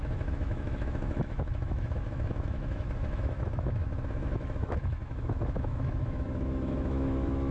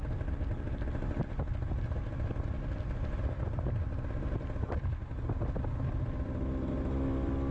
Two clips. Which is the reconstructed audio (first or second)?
first